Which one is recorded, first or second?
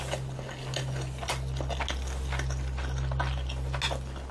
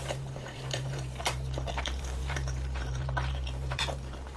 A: first